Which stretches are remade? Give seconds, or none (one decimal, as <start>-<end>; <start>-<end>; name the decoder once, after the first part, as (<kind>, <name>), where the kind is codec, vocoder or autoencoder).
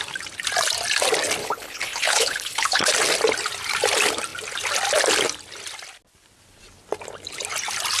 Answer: 1.4-2.9 (codec, HILCodec)